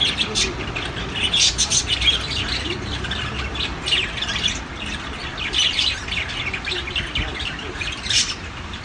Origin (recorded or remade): remade